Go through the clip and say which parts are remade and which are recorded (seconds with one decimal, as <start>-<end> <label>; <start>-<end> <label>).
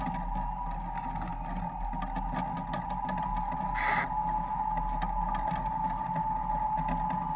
0.0-7.4 recorded